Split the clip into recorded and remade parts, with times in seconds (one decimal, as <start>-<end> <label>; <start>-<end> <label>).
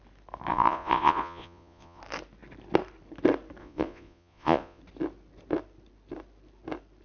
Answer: 0.0-0.5 recorded; 0.5-2.0 remade; 2.0-3.6 recorded; 3.6-4.8 remade; 4.8-7.0 recorded